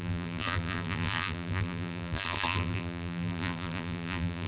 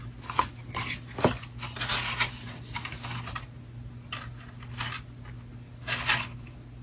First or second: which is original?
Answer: second